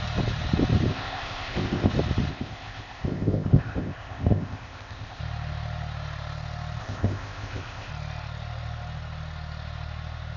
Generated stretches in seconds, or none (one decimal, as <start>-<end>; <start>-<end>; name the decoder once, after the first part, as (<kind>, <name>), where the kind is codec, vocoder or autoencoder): 0.9-1.9 (codec, ZipCodec); 2.3-5.2; 6.8-7.9